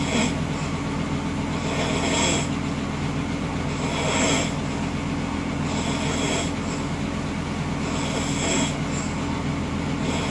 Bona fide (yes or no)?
yes